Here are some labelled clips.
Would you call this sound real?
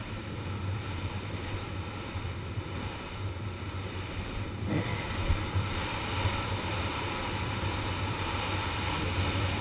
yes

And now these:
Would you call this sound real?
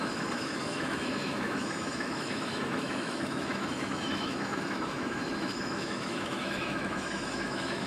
no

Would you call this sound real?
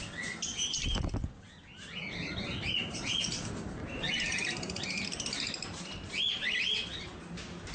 yes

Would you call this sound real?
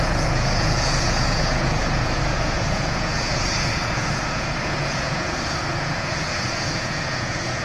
no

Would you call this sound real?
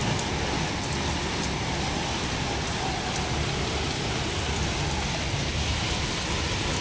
yes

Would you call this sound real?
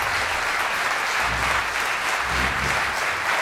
yes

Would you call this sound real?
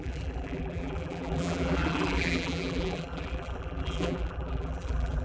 no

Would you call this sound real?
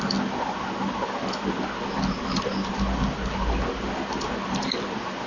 yes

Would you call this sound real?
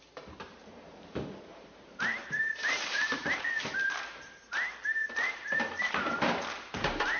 no